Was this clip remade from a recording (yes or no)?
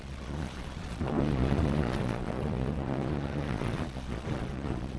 yes